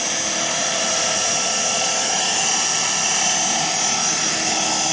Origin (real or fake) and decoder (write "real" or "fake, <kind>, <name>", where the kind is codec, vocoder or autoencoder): real